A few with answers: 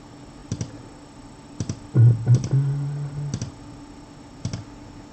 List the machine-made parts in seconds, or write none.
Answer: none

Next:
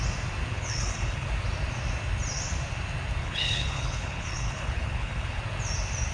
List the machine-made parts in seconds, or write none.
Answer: 0.5-1.3; 3.2-5.4

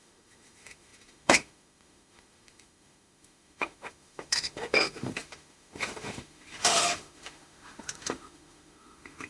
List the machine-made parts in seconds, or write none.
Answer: 0.0-9.3

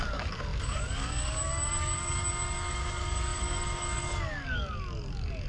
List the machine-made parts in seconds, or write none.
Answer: 0.0-5.5